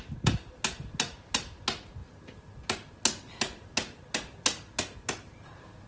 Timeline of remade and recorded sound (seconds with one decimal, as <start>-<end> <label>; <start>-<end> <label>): 0.0-5.9 recorded